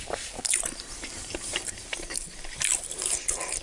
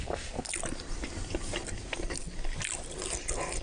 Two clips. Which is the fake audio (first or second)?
first